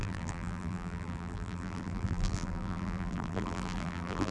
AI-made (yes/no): yes